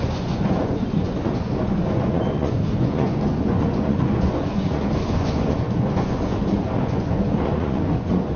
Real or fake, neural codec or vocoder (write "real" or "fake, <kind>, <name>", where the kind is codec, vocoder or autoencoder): fake, vocoder, Vocos